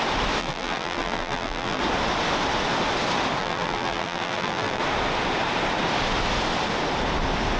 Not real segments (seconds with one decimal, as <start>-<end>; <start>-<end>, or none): 0.4-1.8; 3.4-4.8